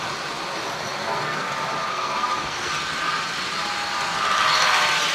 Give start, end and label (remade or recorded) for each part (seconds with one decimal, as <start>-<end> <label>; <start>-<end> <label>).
0.0-1.0 recorded; 1.0-1.5 remade; 1.5-1.9 recorded; 1.9-2.7 remade; 2.7-5.1 recorded